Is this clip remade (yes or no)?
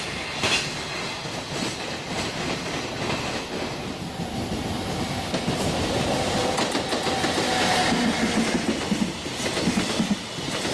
no